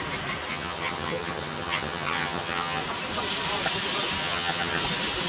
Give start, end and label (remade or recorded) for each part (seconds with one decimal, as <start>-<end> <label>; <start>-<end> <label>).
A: 0.0-0.5 recorded; 0.5-2.8 remade; 2.8-4.2 recorded; 4.2-4.8 remade; 4.8-5.3 recorded